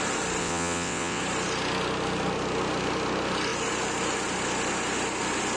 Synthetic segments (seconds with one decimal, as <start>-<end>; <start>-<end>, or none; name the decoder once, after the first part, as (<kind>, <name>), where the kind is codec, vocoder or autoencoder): 0.4-1.2 (vocoder, WaveNeXt)